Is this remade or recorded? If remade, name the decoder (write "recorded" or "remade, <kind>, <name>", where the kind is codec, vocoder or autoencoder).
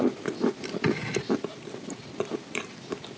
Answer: recorded